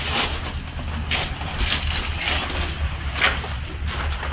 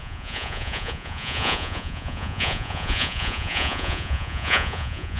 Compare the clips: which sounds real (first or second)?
first